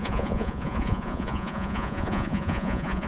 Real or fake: fake